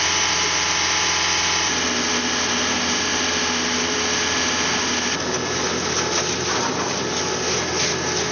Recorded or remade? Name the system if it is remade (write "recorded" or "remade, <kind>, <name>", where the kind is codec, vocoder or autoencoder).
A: recorded